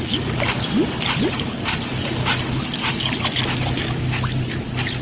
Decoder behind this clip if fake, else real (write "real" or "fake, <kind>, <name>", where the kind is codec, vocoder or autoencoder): real